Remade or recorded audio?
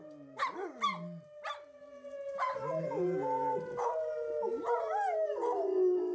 recorded